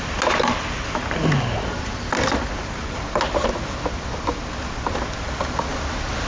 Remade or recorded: recorded